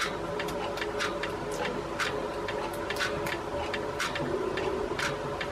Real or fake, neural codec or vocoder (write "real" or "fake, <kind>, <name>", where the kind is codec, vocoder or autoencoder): real